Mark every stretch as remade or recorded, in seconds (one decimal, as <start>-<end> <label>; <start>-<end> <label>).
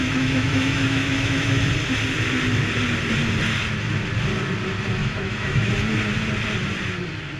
0.0-1.6 remade; 1.6-5.0 recorded; 5.0-5.7 remade; 5.7-7.4 recorded